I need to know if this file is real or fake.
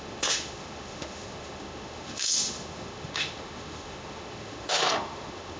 fake